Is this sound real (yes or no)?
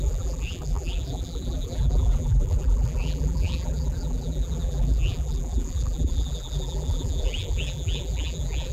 no